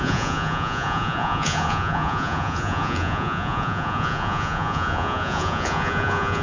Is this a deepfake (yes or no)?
yes